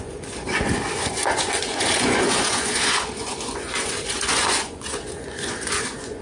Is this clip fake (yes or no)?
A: yes